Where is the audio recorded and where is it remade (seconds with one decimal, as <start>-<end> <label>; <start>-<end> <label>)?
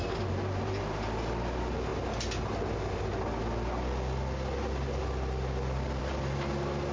0.0-6.9 recorded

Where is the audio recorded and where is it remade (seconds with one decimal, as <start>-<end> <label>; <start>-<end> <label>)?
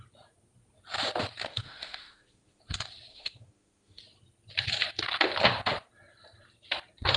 0.0-1.5 recorded; 1.5-2.6 remade; 2.6-3.1 recorded; 3.1-4.0 remade; 4.0-7.2 recorded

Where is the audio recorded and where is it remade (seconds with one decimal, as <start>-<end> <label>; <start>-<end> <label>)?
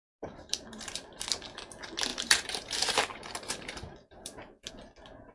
0.0-1.2 remade; 1.2-2.1 recorded; 2.1-4.7 remade; 4.7-5.3 recorded